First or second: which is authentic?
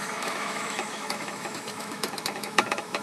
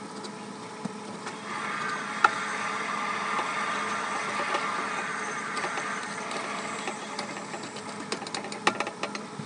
second